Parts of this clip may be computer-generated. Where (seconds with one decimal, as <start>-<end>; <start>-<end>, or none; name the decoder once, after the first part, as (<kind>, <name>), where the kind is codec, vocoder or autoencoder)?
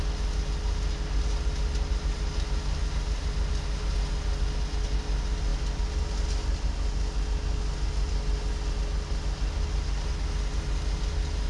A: none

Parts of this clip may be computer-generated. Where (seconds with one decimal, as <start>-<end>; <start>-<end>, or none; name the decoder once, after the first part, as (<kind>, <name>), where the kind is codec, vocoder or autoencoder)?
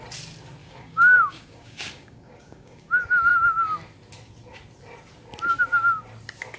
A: 0.6-2.9 (codec, DAC)